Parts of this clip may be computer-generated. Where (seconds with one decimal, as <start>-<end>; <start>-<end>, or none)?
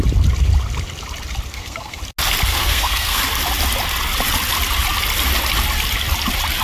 1.5-2.0; 2.5-3.2